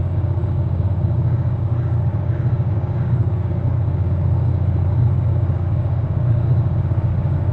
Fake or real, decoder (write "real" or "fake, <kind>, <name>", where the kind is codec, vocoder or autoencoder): fake, codec, DAC